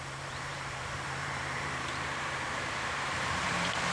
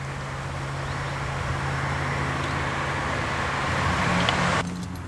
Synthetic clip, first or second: first